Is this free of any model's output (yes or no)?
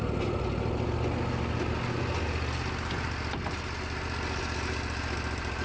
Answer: yes